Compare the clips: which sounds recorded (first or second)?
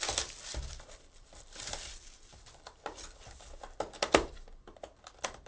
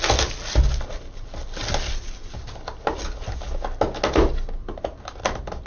second